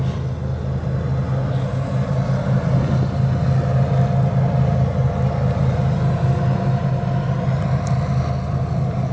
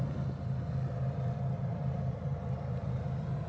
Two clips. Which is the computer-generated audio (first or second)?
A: second